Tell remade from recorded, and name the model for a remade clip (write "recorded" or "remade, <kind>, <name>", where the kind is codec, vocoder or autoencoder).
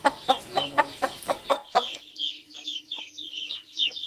remade, codec, SNAC